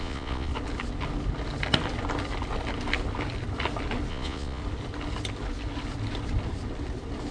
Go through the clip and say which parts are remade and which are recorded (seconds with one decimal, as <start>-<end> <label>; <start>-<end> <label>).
0.0-0.5 remade; 0.5-4.1 recorded; 4.1-4.6 remade; 4.6-7.3 recorded